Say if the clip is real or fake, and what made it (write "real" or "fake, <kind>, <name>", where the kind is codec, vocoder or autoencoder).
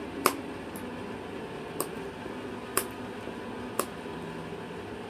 real